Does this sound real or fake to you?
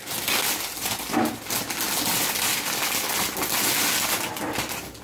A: real